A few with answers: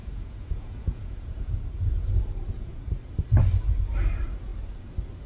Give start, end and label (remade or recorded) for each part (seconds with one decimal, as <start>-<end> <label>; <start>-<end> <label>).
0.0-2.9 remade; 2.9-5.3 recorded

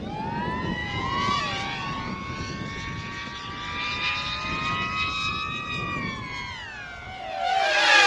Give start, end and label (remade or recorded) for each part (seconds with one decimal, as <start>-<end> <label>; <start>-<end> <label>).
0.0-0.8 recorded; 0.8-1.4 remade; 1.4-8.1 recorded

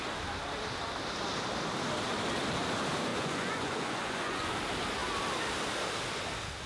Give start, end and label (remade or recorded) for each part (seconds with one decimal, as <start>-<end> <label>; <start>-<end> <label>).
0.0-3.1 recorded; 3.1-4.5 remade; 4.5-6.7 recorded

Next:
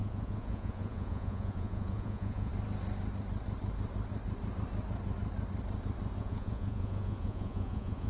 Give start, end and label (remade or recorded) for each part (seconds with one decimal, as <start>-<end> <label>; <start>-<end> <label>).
0.0-2.5 remade; 2.5-6.2 recorded; 6.2-8.1 remade

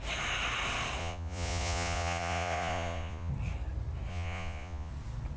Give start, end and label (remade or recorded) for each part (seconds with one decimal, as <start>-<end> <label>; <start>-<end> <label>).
0.0-1.0 recorded; 1.0-3.3 remade; 3.3-4.1 recorded; 4.1-4.9 remade; 4.9-5.4 recorded

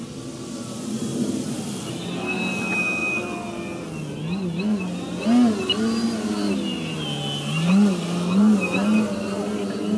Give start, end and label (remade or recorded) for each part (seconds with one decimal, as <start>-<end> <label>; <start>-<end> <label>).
0.0-10.0 recorded

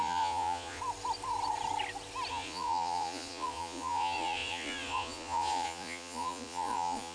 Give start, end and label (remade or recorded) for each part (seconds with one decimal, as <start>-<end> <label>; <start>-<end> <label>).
0.0-0.8 remade; 0.8-2.3 recorded; 2.3-7.1 remade